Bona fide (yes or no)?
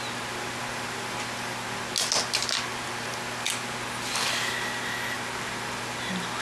yes